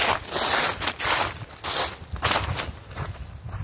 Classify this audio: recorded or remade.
recorded